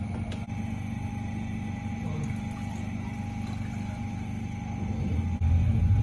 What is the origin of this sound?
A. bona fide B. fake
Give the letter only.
A